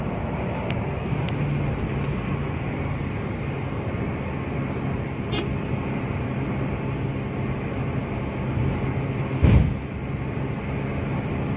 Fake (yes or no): no